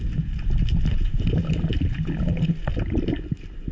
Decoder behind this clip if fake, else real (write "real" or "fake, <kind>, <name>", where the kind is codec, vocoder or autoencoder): real